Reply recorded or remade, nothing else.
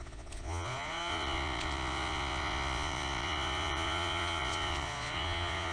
remade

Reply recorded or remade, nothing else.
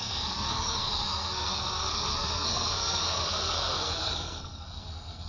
remade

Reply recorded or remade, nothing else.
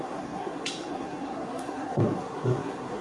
remade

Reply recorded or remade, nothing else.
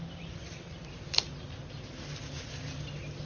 recorded